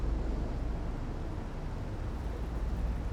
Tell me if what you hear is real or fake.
real